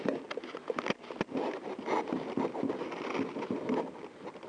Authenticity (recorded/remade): recorded